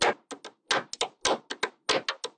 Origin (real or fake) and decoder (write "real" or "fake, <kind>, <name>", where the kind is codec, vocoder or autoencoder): real